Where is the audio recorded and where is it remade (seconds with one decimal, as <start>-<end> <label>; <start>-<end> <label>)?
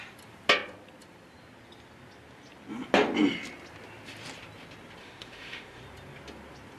0.0-5.0 recorded; 5.0-5.8 remade; 5.8-6.8 recorded